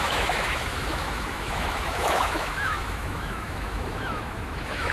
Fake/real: fake